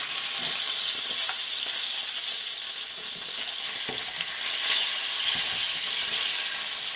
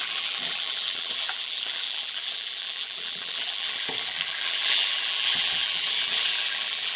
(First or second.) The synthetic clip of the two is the second